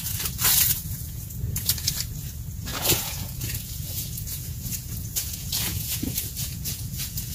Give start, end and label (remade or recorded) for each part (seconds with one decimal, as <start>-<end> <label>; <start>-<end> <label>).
0.0-0.8 recorded; 0.8-1.9 remade; 1.9-2.7 recorded; 2.7-7.3 remade